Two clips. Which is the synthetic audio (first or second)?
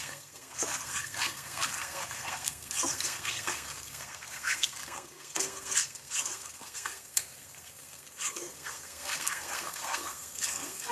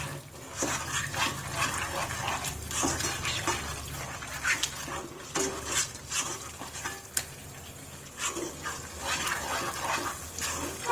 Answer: first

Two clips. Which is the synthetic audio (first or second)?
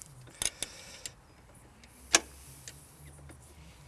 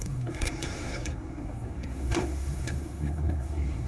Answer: second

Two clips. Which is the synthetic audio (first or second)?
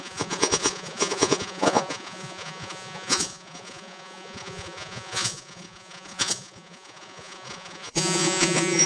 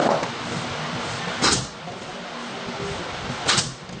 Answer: first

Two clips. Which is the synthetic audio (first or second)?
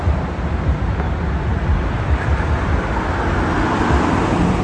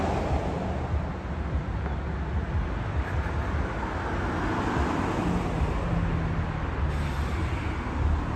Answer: first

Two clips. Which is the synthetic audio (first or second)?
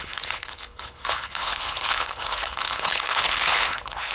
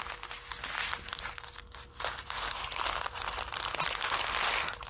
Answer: first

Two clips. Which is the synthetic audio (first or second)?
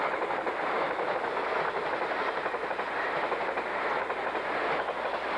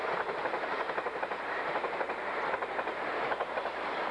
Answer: second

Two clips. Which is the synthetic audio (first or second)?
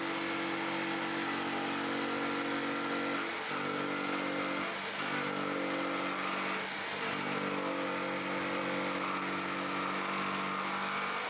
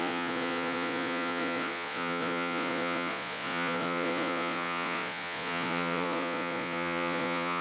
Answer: second